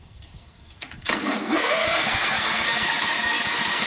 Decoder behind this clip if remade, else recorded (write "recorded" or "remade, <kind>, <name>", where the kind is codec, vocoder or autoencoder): remade, codec, SNAC